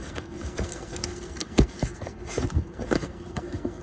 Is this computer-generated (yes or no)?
yes